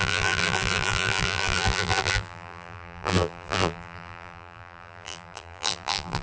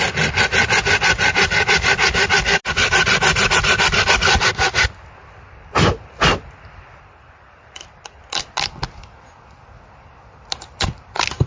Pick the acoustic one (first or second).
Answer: second